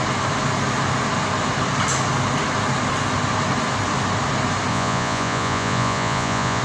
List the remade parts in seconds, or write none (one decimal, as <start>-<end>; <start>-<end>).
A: 4.7-6.6